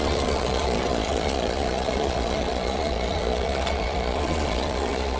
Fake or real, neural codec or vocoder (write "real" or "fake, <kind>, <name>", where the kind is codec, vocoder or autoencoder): fake, vocoder, Vocos